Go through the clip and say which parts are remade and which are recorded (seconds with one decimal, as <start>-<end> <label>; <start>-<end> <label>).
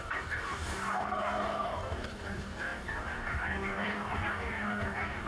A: 0.0-5.3 remade